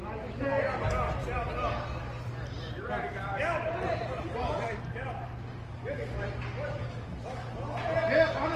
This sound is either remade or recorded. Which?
recorded